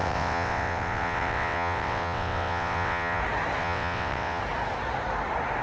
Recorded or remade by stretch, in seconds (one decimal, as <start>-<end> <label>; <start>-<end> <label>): 0.0-3.2 remade; 3.2-3.6 recorded; 3.6-4.4 remade; 4.4-5.6 recorded

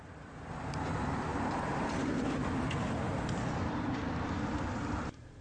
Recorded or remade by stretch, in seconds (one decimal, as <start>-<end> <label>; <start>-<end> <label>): 0.0-4.0 remade; 4.0-4.5 recorded; 4.5-5.4 remade

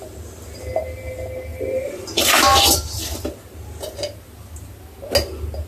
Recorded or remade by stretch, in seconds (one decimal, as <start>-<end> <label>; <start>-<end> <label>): 0.0-1.5 recorded; 1.5-2.2 remade; 2.2-5.7 recorded

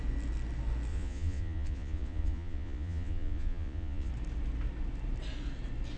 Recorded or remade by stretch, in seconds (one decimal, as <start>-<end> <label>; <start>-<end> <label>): 0.0-0.9 recorded; 0.9-4.1 remade; 4.1-6.0 recorded

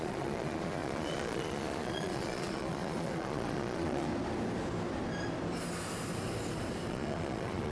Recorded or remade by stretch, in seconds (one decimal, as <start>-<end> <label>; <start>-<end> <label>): 0.0-4.1 remade; 4.1-6.9 recorded; 6.9-7.7 remade

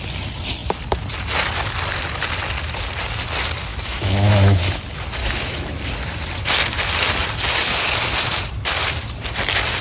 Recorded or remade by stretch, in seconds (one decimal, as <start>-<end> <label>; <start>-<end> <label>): 0.0-3.7 recorded; 3.7-4.3 remade; 4.3-5.2 recorded; 5.2-5.9 remade; 5.9-9.8 recorded

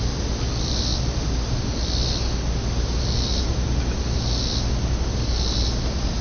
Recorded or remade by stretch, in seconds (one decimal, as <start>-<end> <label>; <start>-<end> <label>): 0.0-6.2 recorded

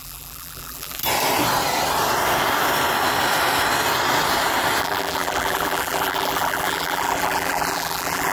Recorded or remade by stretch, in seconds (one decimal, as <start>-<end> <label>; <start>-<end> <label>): 0.0-1.0 remade; 1.0-4.8 recorded; 4.8-8.3 remade